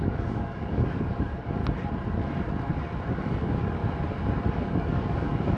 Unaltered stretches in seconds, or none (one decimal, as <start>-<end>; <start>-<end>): 1.6-3.1; 3.8-4.5